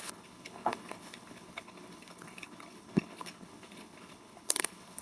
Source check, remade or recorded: remade